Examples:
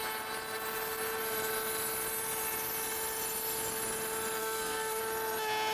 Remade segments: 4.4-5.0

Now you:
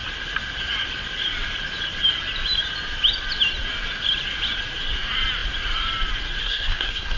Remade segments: 6.4-7.2

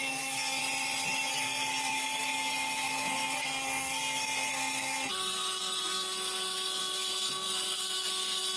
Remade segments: 0.0-0.6; 1.3-8.6

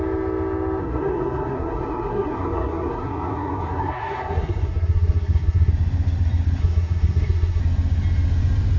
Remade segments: 0.8-5.7; 6.6-7.6

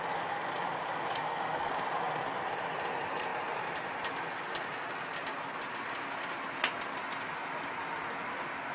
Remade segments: 1.1-1.7

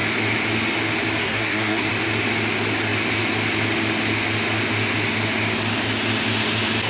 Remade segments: 1.2-1.9

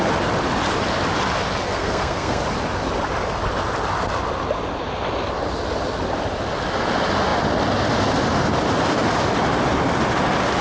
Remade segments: 1.7-2.4

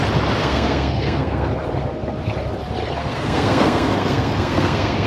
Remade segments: 0.4-1.5; 3.0-5.1